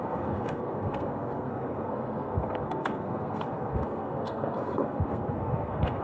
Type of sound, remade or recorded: remade